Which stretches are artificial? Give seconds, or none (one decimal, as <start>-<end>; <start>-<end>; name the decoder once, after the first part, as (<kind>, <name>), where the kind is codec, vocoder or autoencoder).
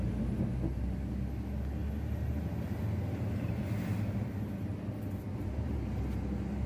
none